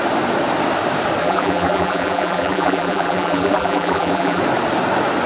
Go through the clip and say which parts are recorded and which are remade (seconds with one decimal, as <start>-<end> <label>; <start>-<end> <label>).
0.0-1.2 recorded; 1.2-4.4 remade; 4.4-5.3 recorded